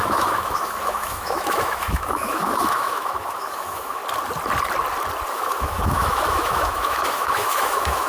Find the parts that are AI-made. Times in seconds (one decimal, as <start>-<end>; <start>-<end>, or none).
0.0-4.0; 5.3-8.1